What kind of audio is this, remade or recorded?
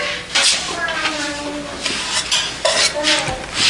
recorded